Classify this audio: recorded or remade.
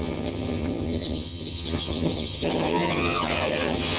remade